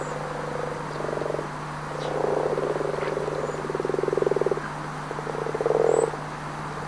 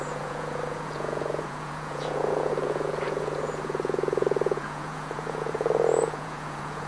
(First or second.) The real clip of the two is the first